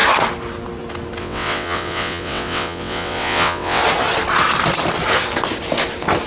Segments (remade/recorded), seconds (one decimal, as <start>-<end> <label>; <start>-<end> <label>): 0.0-1.2 recorded; 1.2-3.8 remade; 3.8-6.3 recorded